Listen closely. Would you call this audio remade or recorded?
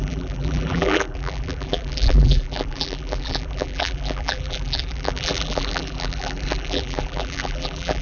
remade